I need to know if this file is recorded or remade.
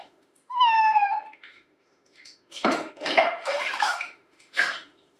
remade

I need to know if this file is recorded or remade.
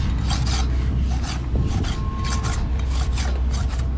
recorded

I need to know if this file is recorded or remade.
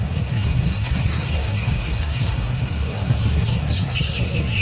remade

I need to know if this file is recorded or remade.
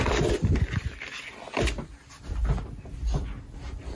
recorded